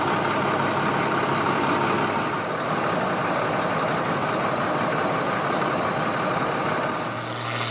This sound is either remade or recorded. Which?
recorded